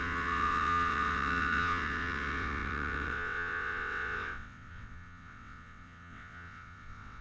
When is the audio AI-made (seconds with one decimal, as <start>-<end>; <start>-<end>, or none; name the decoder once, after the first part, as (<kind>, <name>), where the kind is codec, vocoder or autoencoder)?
0.0-7.2 (vocoder, WaveNeXt)